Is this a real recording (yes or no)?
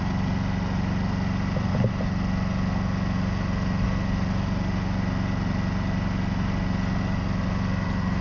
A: yes